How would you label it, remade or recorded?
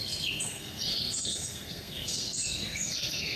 remade